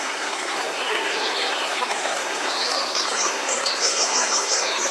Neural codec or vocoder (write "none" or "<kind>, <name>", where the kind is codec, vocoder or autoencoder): codec, SNAC